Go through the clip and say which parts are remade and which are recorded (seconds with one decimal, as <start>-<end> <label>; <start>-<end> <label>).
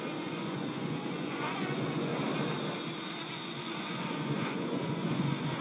0.0-2.1 remade; 2.1-3.3 recorded; 3.3-5.6 remade